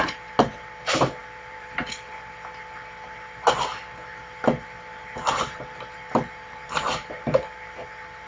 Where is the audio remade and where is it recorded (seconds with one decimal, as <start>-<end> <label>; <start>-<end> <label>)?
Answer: 0.0-1.2 recorded; 1.2-2.1 remade; 2.1-8.3 recorded